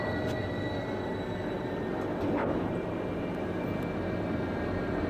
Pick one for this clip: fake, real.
real